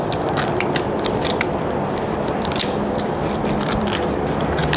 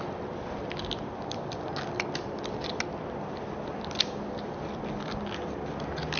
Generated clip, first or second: first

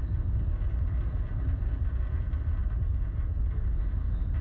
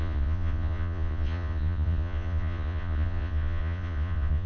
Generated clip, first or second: second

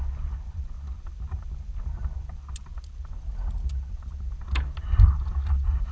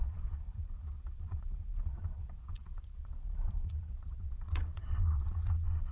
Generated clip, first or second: second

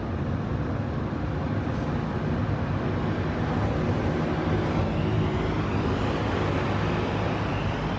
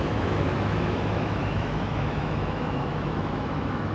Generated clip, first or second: second